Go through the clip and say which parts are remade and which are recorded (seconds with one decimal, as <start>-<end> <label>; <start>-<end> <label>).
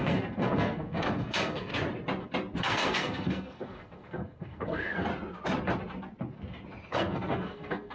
0.0-1.7 remade; 1.7-2.6 recorded; 2.6-5.1 remade; 5.1-6.9 recorded; 6.9-7.9 remade